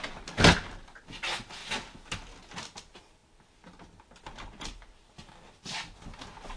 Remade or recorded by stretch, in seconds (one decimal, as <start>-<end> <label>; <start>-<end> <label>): 0.0-3.2 recorded; 3.2-5.3 remade; 5.3-6.6 recorded